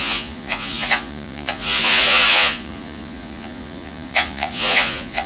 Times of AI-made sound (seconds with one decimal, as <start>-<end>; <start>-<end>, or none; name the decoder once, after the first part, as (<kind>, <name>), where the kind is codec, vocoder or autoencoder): 0.0-5.3 (vocoder, Vocos)